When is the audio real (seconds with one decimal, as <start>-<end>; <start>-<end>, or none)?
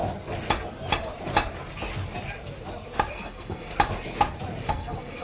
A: 0.0-3.1; 3.7-4.7